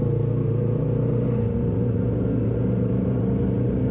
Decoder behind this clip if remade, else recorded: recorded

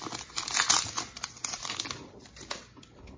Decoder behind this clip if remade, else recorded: recorded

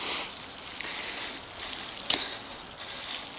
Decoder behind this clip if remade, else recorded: recorded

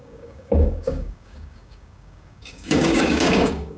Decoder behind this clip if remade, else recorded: remade, codec, DAC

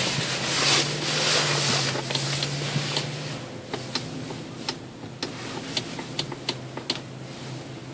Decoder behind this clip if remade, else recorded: recorded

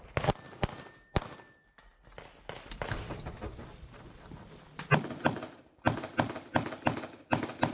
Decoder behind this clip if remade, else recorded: recorded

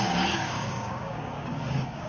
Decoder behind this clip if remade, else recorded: remade, codec, DAC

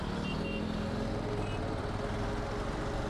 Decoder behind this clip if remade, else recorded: recorded